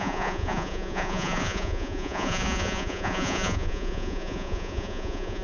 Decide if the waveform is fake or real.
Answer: fake